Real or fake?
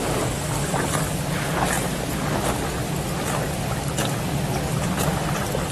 real